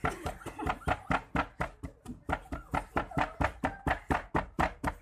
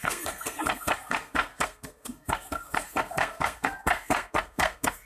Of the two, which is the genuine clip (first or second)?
first